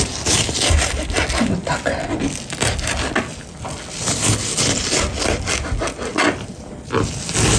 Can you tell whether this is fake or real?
real